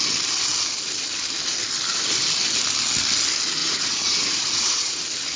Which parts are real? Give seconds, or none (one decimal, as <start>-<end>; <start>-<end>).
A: 0.0-3.6; 5.0-5.4